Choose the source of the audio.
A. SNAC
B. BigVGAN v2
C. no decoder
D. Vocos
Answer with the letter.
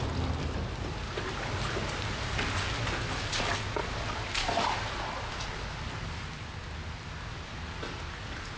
C